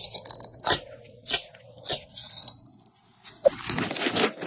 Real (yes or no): yes